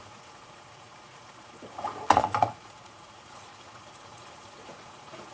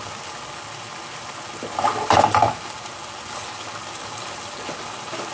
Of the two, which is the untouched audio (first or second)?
second